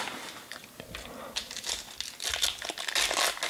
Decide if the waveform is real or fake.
real